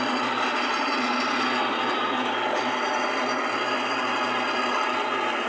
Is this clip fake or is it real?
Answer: real